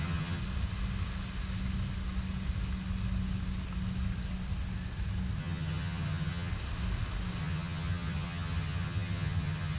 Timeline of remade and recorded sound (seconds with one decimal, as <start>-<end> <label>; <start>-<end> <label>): 0.0-0.4 remade; 0.4-5.4 recorded; 5.4-6.5 remade; 6.5-7.4 recorded; 7.4-9.8 remade